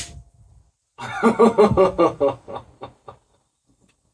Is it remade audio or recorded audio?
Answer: recorded